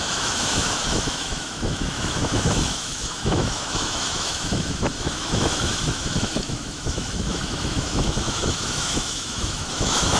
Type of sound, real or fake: fake